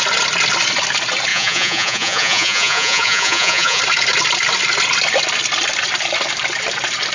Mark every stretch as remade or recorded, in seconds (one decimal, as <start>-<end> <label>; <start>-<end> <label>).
0.0-1.3 recorded; 1.3-3.8 remade; 3.8-7.1 recorded